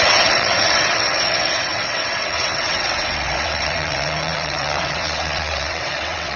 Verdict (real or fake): fake